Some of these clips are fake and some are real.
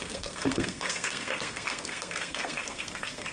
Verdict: fake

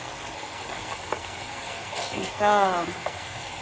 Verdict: fake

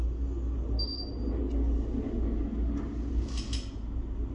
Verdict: real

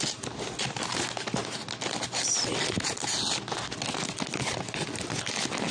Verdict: real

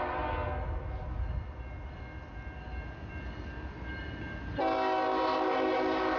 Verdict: real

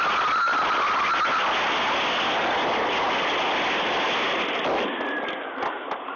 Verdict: real